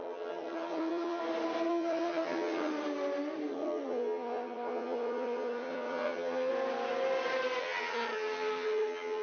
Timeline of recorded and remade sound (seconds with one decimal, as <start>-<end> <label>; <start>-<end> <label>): 0.0-1.2 remade; 1.2-1.7 recorded; 1.7-2.7 remade; 2.7-3.5 recorded; 3.5-6.5 remade; 6.5-7.6 recorded; 7.6-9.2 remade